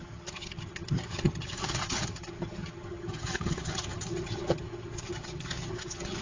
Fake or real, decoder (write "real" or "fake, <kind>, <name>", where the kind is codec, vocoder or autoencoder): fake, vocoder, HiFi-GAN